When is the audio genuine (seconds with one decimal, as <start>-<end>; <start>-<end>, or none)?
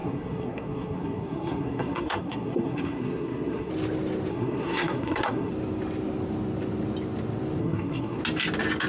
3.7-4.3; 5.5-7.6; 8.2-8.9